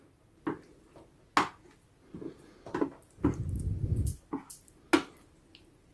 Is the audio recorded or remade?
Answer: recorded